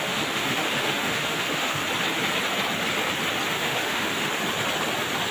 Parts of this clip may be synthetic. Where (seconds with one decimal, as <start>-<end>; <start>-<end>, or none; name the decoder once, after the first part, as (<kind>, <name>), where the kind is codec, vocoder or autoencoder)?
0.0-1.8 (autoencoder, DAC-VAE); 3.5-4.4